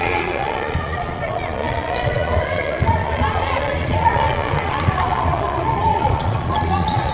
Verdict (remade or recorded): remade